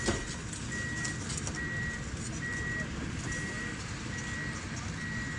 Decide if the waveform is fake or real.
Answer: real